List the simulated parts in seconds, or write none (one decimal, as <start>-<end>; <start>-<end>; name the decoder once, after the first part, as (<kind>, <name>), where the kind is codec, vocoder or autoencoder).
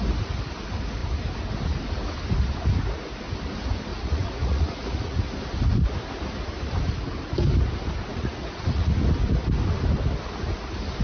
3.9-5.2 (vocoder, Vocos); 8.1-8.9